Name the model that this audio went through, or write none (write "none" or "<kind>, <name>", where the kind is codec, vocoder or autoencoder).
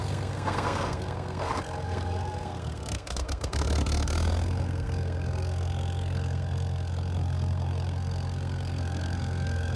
codec, SNAC